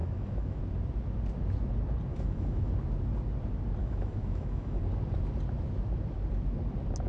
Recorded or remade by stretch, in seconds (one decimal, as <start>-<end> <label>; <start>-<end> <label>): 0.0-0.6 remade; 0.6-2.1 recorded; 2.1-2.7 remade; 2.7-3.8 recorded; 3.8-4.8 remade; 4.8-7.1 recorded